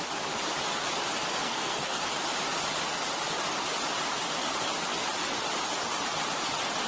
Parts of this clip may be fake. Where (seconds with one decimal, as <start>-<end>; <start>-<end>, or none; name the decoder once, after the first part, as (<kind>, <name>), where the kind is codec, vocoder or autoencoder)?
1.4-2.1 (codec, SNAC)